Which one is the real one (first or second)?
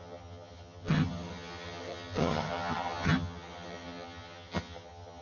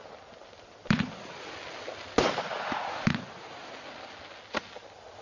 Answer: second